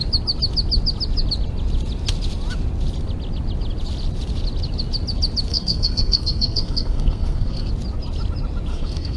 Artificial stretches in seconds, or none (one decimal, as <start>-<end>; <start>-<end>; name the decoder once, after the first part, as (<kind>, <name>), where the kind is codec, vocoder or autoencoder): 5.5-7.7 (codec, SNAC); 8.7-9.2